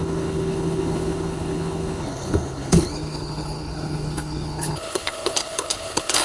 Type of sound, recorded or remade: remade